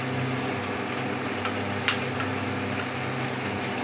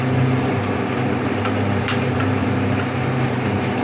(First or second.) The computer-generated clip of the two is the second